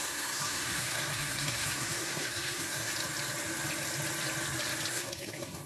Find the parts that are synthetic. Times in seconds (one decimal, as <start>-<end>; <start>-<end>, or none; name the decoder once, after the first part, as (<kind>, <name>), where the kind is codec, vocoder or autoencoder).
0.0-2.9 (codec, SNAC); 4.9-5.7